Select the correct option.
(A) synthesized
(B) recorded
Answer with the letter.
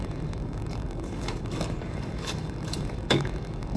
A